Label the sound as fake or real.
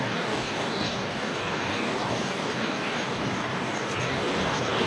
fake